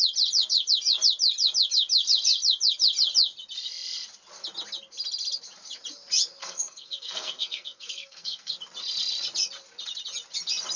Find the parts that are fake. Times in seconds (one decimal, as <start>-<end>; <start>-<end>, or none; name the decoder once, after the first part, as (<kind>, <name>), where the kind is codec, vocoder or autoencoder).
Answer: 6.4-8.5 (codec, SNAC)

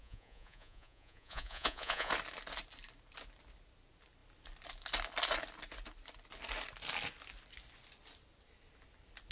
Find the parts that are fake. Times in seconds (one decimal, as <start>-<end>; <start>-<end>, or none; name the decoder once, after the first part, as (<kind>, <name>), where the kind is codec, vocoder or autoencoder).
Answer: 0.0-2.1 (vocoder, Vocos)

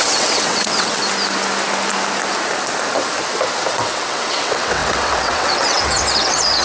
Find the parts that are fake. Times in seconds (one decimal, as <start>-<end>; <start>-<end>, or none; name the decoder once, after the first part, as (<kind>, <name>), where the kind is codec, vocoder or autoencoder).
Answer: 0.0-1.0 (vocoder, WaveNeXt); 3.7-6.6

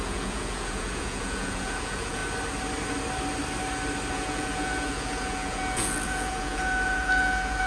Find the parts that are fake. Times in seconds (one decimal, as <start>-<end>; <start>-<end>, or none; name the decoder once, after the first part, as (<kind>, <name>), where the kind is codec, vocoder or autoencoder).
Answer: 0.0-2.2 (vocoder, Vocos); 4.1-7.7

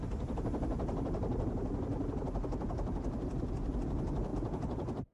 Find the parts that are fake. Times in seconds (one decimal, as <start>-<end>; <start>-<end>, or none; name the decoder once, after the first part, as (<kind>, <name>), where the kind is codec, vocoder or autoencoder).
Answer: 4.3-5.1 (vocoder, BigVGAN v2)

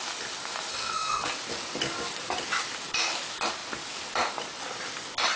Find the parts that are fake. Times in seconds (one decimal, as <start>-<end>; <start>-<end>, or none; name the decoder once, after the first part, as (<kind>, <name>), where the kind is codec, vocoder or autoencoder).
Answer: 0.7-1.3 (codec, SNAC)

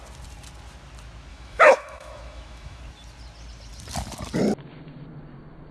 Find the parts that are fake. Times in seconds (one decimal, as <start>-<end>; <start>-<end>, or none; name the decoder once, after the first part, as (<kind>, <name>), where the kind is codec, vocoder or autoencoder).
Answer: 1.3-2.8 (autoencoder, DAC-VAE)

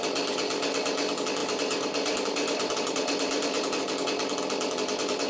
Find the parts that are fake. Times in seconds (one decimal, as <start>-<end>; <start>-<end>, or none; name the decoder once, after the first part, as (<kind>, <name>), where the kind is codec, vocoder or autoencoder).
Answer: 1.4-3.8 (vocoder, BigVGAN v2)